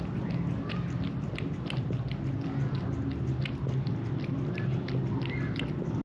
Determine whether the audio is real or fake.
real